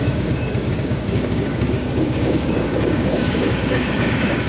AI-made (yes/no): yes